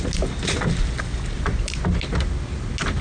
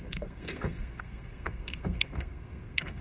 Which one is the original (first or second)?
first